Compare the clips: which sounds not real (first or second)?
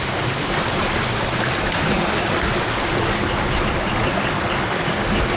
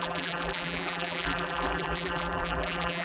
second